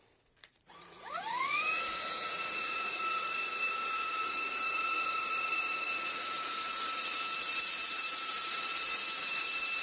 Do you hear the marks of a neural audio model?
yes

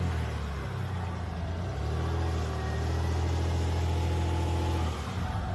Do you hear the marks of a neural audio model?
no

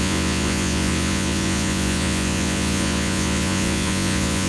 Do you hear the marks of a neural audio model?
yes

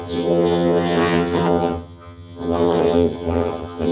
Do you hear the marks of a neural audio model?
yes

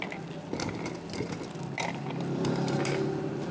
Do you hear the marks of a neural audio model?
no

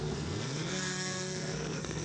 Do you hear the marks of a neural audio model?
yes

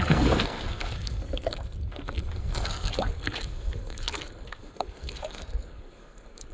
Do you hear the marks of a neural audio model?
yes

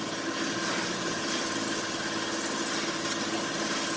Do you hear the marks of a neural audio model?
no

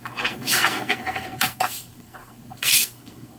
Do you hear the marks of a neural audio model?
yes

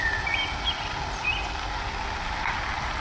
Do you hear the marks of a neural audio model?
no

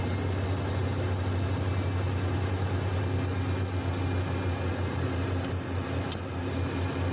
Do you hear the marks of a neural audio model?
no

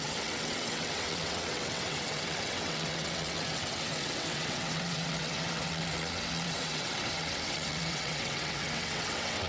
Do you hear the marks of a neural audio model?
yes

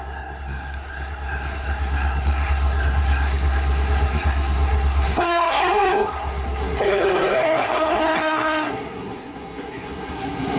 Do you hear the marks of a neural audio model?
yes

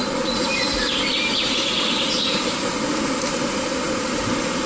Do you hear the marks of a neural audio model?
no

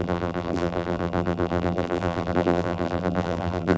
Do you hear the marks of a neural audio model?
yes